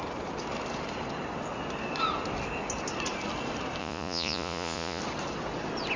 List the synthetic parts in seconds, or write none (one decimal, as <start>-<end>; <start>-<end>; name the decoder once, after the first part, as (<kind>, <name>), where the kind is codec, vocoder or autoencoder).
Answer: 3.8-5.0 (vocoder, Vocos)

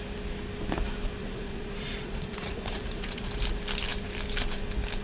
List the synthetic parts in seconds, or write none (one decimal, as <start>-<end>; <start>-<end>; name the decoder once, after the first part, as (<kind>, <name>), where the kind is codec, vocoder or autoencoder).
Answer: 1.2-3.3 (vocoder, Vocos)

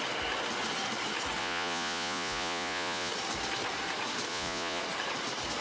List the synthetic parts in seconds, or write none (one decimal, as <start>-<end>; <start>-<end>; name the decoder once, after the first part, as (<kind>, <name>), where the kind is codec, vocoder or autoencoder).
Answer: 1.4-3.1 (vocoder, Vocos); 4.3-4.8

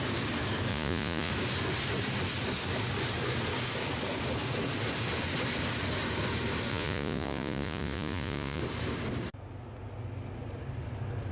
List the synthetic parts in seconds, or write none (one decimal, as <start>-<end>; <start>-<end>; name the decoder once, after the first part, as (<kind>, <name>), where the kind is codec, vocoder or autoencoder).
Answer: 0.7-1.3 (vocoder, Vocos); 6.7-8.6

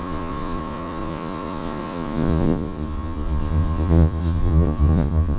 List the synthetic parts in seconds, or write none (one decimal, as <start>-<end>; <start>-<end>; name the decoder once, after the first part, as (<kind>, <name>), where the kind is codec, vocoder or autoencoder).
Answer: 0.0-5.4 (vocoder, Vocos)

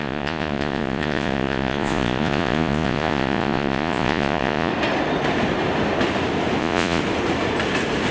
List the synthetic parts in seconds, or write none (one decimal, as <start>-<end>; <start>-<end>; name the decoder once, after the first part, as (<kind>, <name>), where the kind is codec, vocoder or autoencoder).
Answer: 0.0-4.7 (vocoder, Vocos); 6.6-7.0